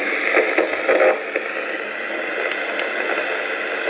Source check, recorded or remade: recorded